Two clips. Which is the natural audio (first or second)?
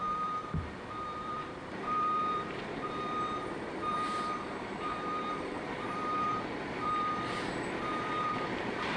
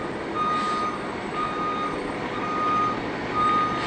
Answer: second